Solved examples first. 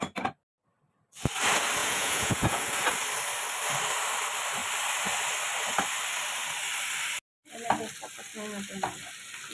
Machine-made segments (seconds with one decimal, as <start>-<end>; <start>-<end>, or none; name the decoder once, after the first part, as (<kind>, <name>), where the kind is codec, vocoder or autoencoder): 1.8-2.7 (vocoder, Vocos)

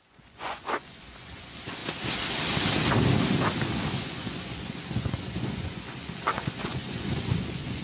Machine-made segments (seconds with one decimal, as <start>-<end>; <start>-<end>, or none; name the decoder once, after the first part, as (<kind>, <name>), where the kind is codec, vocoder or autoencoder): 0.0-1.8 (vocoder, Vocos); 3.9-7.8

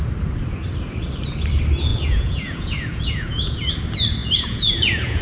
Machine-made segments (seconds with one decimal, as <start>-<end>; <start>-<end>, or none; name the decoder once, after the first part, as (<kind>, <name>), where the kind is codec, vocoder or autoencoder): 1.9-3.7 (vocoder, Vocos); 4.2-5.2